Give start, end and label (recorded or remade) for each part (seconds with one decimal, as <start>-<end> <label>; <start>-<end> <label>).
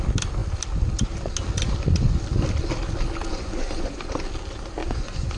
0.0-3.3 recorded; 3.3-4.1 remade; 4.1-4.8 recorded; 4.8-5.4 remade